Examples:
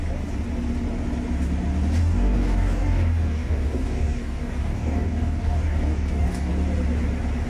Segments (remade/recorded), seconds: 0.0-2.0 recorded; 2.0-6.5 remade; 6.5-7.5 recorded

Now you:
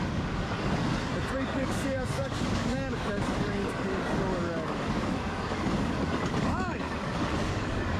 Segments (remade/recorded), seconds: 0.0-0.9 remade; 0.9-1.4 recorded; 1.4-8.0 remade